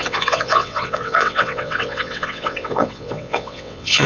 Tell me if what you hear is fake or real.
fake